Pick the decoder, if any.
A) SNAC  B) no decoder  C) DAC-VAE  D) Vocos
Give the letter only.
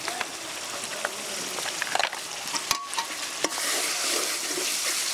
B